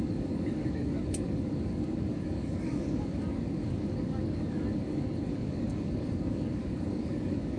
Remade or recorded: remade